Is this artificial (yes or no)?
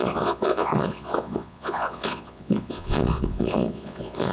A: yes